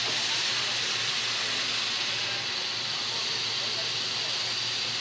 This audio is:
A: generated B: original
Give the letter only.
B